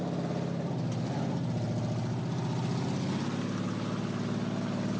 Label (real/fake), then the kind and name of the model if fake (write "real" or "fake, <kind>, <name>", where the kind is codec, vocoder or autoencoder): real